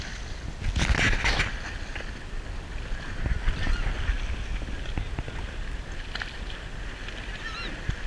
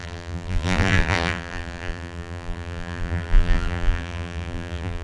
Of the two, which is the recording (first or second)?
first